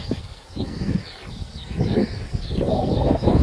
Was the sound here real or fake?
fake